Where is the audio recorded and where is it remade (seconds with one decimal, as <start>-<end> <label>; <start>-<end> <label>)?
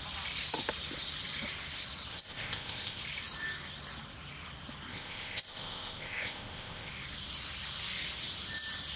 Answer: 0.0-2.1 recorded; 2.1-3.0 remade; 3.0-4.9 recorded; 4.9-6.9 remade; 6.9-9.0 recorded